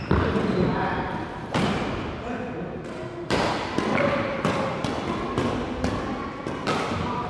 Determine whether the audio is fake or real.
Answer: real